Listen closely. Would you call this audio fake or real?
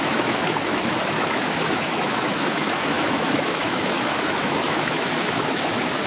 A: fake